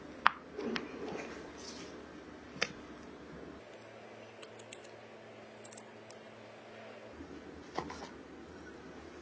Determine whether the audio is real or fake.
real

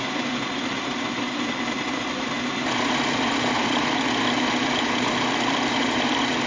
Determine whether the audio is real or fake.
real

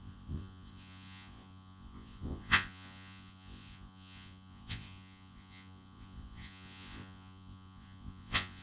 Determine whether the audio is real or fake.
fake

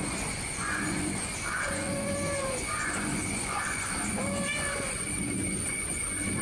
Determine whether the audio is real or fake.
fake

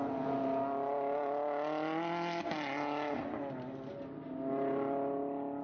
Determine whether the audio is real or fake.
real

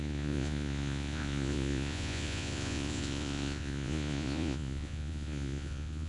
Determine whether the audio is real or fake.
fake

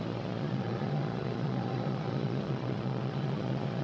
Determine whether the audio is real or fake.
fake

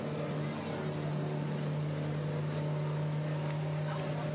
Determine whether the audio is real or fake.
real